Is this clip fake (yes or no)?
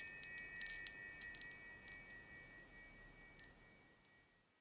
no